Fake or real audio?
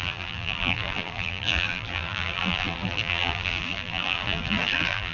fake